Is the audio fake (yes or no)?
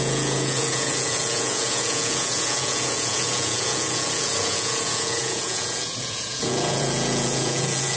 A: yes